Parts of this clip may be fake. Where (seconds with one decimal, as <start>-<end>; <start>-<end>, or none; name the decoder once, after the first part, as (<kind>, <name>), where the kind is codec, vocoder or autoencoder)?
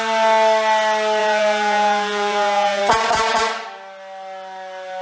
1.2-2.8 (vocoder, Vocos)